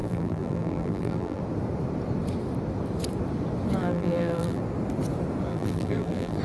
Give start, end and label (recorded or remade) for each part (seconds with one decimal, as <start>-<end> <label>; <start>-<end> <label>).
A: 0.0-1.4 remade; 1.4-3.8 recorded; 3.8-4.6 remade; 4.6-5.5 recorded; 5.5-6.4 remade